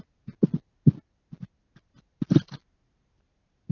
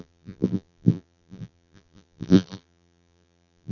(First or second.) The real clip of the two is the first